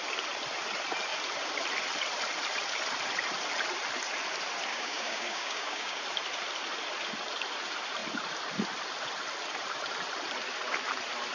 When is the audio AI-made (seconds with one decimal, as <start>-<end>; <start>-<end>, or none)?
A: 4.7-6.0